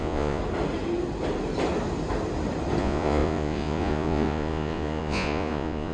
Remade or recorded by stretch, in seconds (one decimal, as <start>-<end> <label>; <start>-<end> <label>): 0.0-0.4 remade; 0.4-2.8 recorded; 2.8-5.9 remade